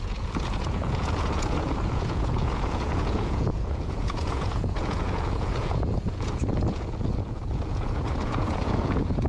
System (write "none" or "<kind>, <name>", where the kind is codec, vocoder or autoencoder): vocoder, Vocos